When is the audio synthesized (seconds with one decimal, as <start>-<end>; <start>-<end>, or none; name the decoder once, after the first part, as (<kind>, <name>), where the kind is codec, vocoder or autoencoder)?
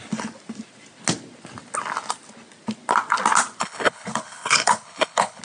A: 3.6-5.4 (codec, HILCodec)